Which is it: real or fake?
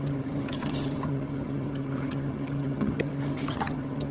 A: fake